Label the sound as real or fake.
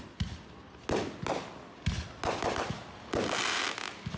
real